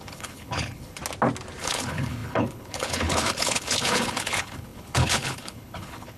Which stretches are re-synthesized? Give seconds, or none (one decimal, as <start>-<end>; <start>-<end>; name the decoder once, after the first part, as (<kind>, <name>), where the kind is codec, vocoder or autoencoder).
0.0-1.0 (codec, HILCodec); 1.6-6.2

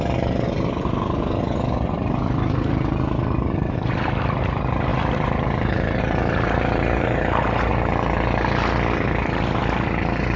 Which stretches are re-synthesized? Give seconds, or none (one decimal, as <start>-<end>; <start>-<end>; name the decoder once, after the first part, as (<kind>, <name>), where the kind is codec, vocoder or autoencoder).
0.0-7.7 (vocoder, BigVGAN v2)

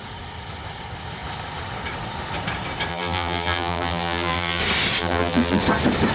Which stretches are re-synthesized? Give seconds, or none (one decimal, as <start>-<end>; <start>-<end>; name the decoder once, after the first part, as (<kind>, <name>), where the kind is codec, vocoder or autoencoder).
2.9-4.6 (vocoder, BigVGAN v2); 5.0-5.6

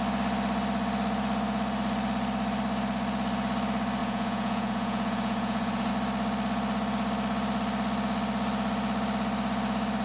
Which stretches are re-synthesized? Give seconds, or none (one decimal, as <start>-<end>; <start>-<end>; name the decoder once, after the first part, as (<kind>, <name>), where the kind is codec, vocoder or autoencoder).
4.0-5.9 (vocoder, Vocos)